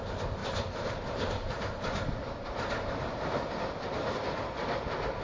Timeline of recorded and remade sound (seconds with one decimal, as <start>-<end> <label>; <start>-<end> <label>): 0.0-0.4 recorded; 0.4-3.5 remade; 3.5-5.2 recorded